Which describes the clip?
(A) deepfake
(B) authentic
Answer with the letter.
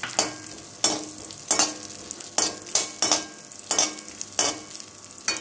B